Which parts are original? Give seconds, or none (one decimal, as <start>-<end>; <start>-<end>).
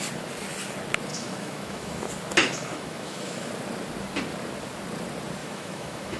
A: 0.0-1.1; 2.0-2.4; 3.5-5.4